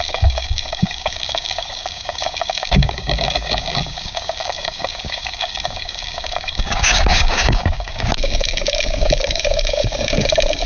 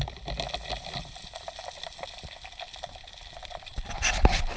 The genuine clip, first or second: second